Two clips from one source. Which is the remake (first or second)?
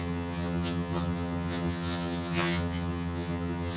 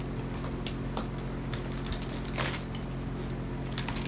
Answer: first